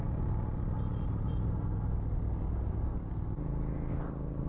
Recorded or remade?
recorded